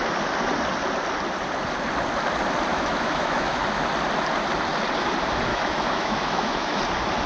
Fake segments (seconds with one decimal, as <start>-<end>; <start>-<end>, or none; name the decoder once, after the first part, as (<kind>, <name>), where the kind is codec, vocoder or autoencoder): 2.7-3.6 (autoencoder, DAC-VAE); 5.5-6.8